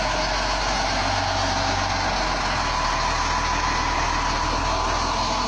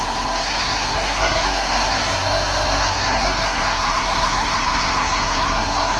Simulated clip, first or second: second